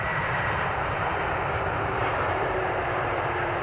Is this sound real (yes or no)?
no